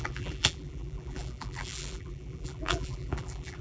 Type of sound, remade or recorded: remade